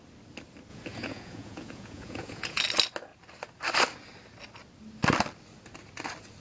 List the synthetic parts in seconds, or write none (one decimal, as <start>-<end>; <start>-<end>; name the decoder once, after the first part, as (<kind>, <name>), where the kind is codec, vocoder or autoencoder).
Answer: 0.7-2.6 (vocoder, Vocos)